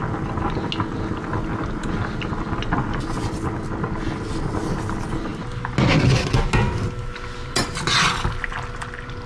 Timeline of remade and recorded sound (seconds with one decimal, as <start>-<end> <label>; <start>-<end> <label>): 0.0-9.3 recorded